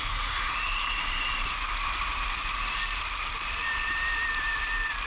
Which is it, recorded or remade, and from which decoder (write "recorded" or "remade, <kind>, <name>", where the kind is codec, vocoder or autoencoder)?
remade, vocoder, BigVGAN v2